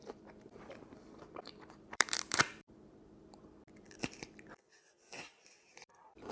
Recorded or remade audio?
remade